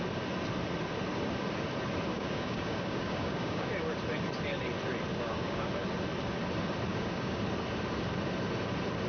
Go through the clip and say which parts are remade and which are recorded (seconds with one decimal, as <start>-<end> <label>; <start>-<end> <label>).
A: 0.0-2.1 recorded; 2.1-3.7 remade; 3.7-5.1 recorded; 5.1-5.7 remade; 5.7-6.9 recorded; 6.9-7.4 remade; 7.4-9.1 recorded